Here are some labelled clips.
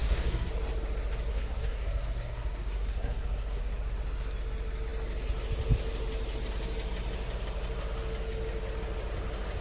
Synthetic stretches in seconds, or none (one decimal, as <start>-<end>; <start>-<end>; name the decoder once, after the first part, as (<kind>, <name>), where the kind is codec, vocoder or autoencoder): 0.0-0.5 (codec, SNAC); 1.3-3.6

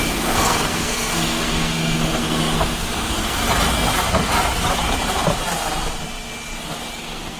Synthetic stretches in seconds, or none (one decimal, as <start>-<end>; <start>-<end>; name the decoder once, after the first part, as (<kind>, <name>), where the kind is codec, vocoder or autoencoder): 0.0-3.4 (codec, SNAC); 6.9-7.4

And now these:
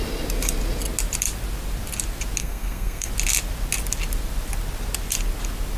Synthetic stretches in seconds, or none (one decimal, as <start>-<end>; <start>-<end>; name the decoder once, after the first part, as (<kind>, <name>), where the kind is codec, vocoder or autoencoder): 2.4-3.1 (codec, SNAC)

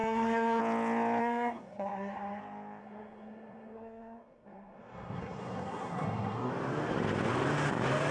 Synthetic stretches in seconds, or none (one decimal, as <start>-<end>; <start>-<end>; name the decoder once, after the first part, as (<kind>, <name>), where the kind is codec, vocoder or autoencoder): 0.0-0.6 (codec, SNAC); 1.2-2.4; 2.8-6.5